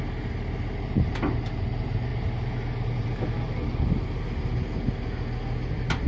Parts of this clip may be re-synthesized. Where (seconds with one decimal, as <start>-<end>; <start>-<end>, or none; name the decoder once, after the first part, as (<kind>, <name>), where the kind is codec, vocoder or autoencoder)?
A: none

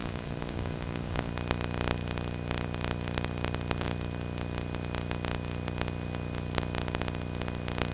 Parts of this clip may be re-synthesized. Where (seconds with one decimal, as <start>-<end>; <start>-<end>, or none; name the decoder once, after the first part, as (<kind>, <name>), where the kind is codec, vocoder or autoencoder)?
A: 0.0-1.3 (codec, DAC)